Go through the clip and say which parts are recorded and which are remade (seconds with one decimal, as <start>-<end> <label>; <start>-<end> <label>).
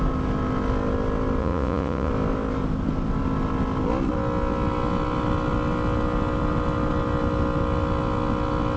0.0-1.4 recorded; 1.4-2.1 remade; 2.1-8.8 recorded